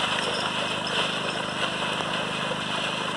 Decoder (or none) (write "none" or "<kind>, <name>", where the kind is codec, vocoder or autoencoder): none